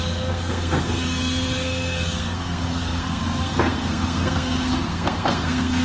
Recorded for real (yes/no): no